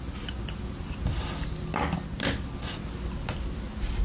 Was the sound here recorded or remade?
recorded